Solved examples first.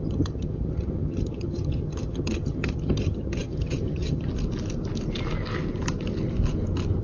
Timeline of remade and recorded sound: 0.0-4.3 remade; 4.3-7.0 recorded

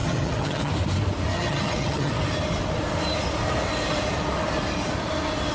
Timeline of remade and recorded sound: 0.0-0.7 remade; 0.7-1.3 recorded; 1.3-2.1 remade; 2.1-5.5 recorded

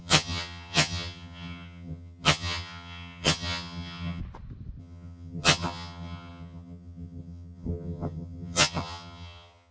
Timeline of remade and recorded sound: 0.0-4.2 remade; 4.2-4.8 recorded; 4.8-9.7 remade

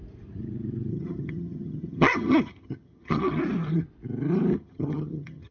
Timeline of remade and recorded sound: 0.0-0.9 recorded; 0.9-3.4 remade; 3.4-4.5 recorded; 4.5-5.5 remade